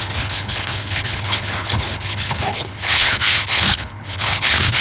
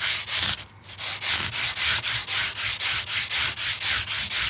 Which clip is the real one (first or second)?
second